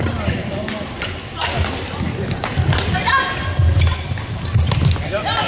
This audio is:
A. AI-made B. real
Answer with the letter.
B